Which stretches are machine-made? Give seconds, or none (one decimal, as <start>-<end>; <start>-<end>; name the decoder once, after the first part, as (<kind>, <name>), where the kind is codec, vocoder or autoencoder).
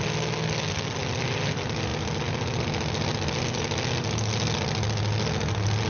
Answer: none